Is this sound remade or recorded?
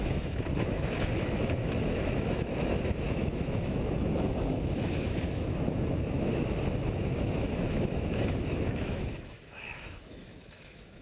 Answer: remade